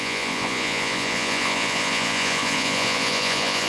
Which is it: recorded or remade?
remade